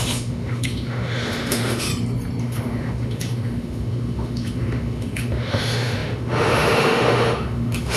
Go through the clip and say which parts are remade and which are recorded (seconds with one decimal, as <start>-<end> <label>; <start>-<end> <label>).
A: 0.0-1.9 remade; 1.9-2.4 recorded; 2.4-8.0 remade